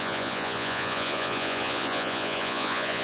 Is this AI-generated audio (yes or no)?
yes